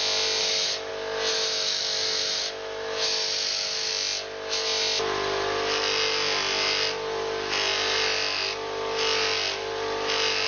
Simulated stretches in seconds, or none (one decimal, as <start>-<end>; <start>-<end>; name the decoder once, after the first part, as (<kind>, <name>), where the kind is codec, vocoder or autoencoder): 0.4-0.9 (autoencoder, DAC-VAE); 1.3-3.9